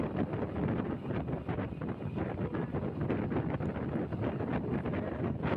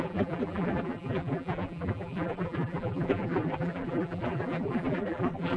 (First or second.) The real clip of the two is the first